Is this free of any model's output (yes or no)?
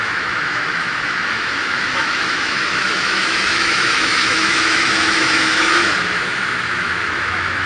no